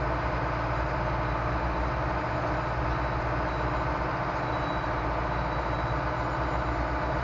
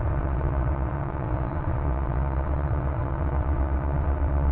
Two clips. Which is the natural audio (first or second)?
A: first